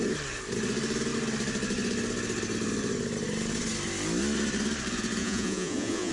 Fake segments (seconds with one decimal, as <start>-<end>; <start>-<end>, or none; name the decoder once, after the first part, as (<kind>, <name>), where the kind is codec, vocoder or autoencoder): 5.2-6.1 (vocoder, Vocos)